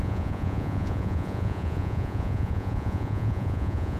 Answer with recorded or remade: remade